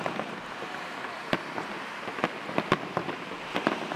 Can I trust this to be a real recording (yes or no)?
yes